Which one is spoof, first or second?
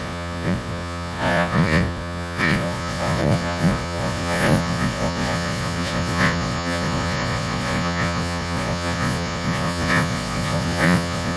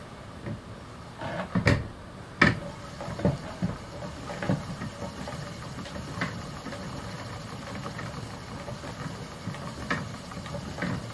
first